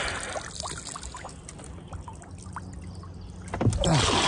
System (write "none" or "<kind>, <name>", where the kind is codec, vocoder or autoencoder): none